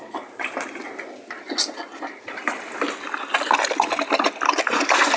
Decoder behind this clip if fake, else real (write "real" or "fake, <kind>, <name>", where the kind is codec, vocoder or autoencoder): real